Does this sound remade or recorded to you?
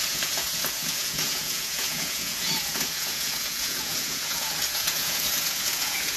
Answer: remade